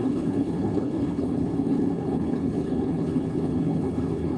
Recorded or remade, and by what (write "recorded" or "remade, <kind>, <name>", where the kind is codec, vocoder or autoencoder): remade, codec, HILCodec